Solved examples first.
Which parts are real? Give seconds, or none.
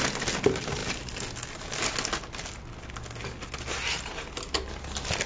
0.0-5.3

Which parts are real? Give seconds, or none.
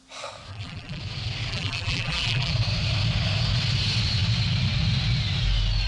0.0-0.5; 1.0-1.5; 2.5-5.9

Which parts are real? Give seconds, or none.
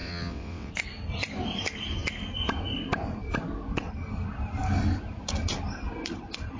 0.7-6.6